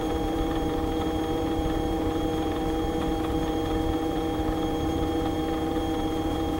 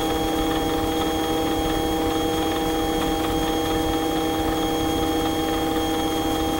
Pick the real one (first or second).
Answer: second